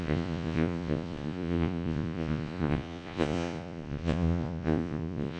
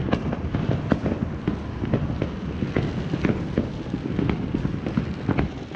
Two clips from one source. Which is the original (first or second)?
second